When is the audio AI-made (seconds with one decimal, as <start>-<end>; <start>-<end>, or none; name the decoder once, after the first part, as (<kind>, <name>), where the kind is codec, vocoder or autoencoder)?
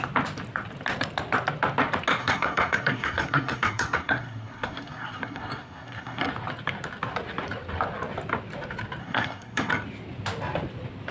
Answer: 2.2-6.3 (codec, SNAC); 9.0-9.7